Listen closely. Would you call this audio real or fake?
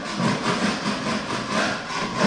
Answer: real